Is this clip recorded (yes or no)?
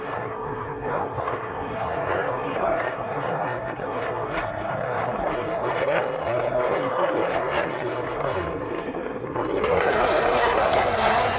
no